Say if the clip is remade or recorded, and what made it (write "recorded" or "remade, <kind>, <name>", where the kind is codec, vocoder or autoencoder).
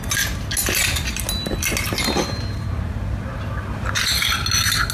recorded